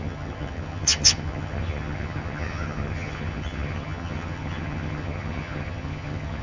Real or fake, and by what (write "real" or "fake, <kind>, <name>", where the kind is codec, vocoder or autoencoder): fake, vocoder, HiFi-GAN